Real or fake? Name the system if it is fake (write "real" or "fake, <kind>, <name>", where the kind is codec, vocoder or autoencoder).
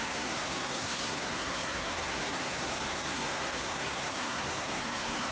fake, codec, SNAC